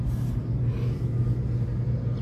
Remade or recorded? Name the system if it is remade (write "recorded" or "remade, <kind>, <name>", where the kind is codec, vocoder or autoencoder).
recorded